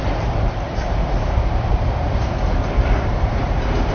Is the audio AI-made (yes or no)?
yes